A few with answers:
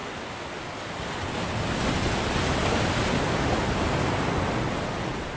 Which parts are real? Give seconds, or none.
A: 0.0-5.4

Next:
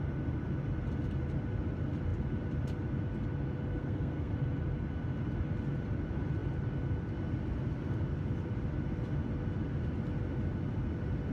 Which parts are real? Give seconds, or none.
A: 0.0-3.7; 4.3-11.3

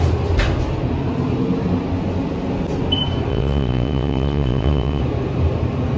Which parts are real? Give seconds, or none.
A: 0.0-3.3; 5.0-6.0